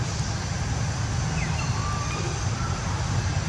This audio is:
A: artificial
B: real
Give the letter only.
B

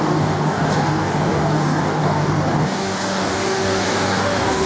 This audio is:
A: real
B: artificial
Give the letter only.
B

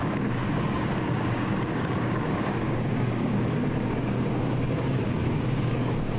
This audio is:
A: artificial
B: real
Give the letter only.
A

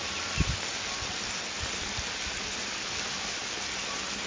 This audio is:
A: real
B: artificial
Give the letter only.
A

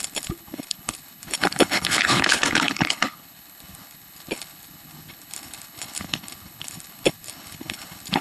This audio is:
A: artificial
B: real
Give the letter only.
A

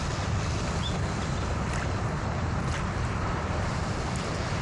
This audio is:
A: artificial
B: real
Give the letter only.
A